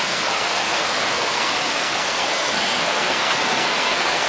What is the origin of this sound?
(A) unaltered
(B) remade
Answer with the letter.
B